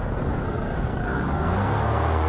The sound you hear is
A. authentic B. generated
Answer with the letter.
B